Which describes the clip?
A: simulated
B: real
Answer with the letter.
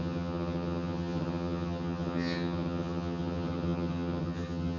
A